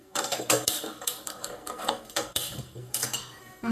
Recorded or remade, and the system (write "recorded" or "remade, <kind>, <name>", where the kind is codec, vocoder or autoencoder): remade, codec, SNAC